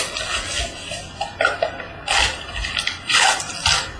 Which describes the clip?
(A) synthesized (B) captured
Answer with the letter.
B